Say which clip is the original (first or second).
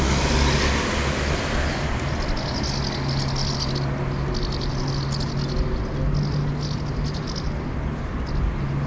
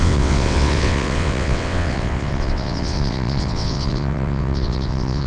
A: first